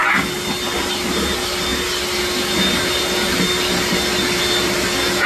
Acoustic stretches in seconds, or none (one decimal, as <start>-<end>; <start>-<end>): 0.0-5.3